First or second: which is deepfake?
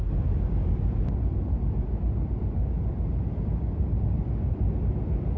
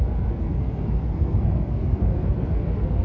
second